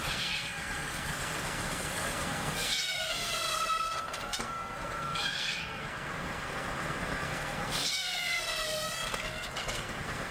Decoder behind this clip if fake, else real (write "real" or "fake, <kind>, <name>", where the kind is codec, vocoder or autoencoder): fake, codec, SNAC